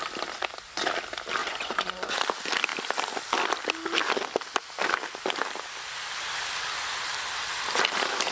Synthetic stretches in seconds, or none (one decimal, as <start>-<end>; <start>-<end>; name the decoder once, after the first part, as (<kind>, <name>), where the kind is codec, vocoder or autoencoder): 1.4-2.2 (vocoder, Vocos)